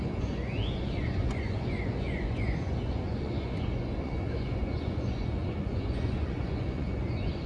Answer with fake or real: fake